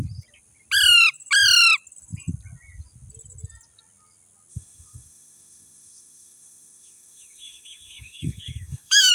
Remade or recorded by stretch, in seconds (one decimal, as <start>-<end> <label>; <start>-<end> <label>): 0.0-4.5 recorded; 4.5-9.1 remade